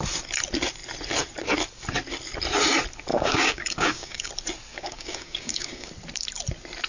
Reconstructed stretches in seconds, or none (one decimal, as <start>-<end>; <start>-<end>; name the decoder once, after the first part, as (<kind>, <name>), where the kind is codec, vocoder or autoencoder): 3.1-4.3 (codec, DAC); 4.7-5.9

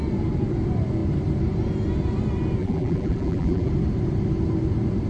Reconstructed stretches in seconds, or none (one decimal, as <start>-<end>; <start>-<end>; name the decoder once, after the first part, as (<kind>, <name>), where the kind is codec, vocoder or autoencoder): 2.6-3.7 (vocoder, BigVGAN v2)